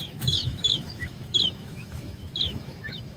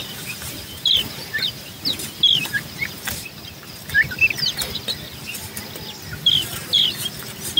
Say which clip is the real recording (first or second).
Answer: second